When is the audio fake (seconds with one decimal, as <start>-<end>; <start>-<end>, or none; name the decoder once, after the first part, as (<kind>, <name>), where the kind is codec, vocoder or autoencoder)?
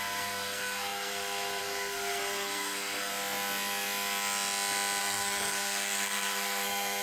0.0-3.1 (codec, SNAC); 5.0-7.0